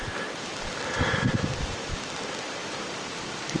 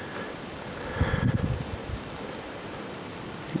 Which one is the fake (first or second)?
first